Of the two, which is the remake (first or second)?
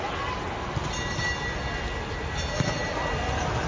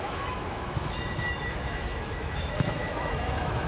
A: second